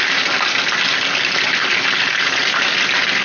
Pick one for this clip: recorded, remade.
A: recorded